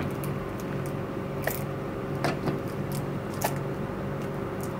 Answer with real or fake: real